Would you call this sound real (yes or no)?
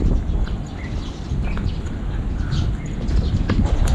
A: yes